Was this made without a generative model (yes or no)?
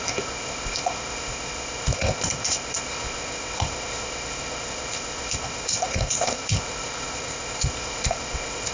no